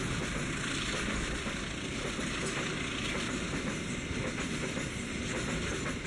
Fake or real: real